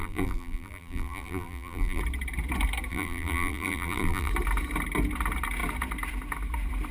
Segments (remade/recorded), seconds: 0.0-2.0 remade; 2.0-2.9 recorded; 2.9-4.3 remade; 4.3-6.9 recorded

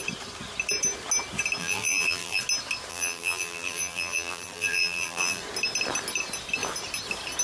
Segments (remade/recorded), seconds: 0.0-1.6 recorded; 1.6-2.4 remade; 2.4-2.9 recorded; 2.9-5.4 remade; 5.4-7.4 recorded

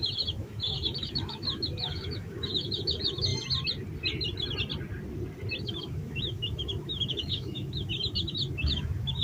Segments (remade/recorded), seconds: 0.0-3.3 remade; 3.3-5.6 recorded; 5.6-9.2 remade

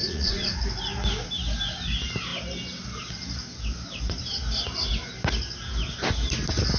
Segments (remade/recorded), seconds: 0.0-0.6 remade; 0.6-6.8 recorded

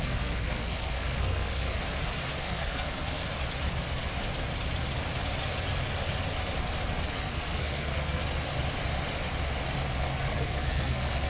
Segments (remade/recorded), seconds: 0.0-1.8 remade; 1.8-2.4 recorded; 2.4-3.2 remade; 3.2-7.1 recorded; 7.1-8.2 remade; 8.2-10.0 recorded; 10.0-11.3 remade

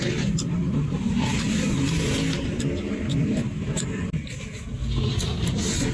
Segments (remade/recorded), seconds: 0.0-5.9 recorded

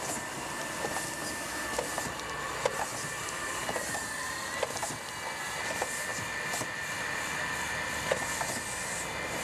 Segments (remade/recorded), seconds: 0.0-9.4 recorded